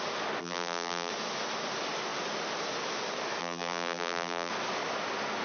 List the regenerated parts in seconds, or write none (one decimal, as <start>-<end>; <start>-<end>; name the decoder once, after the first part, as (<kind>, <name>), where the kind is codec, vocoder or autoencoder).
0.4-1.1 (vocoder, BigVGAN v2); 3.4-4.5